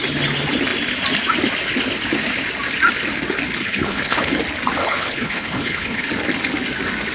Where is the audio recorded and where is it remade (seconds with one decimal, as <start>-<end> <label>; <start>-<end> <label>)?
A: 0.0-3.6 recorded; 3.6-4.3 remade; 4.3-4.8 recorded; 4.8-6.1 remade; 6.1-7.1 recorded